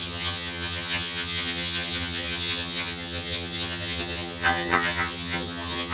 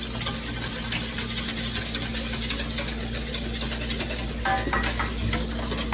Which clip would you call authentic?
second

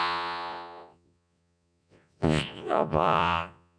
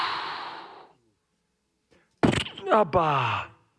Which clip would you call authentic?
second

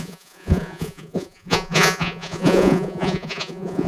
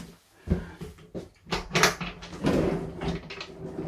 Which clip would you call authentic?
second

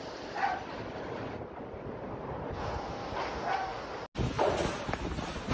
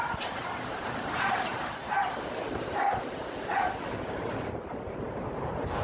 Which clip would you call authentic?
first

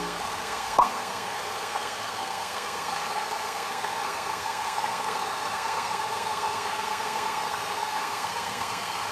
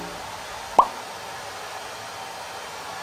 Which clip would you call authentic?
second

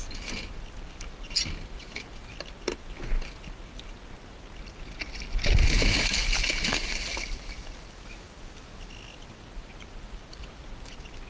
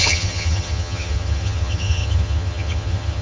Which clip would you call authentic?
first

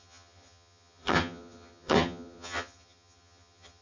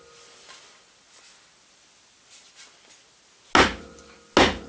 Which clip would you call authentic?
second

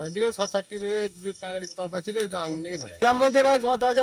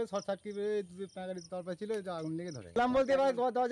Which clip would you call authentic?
second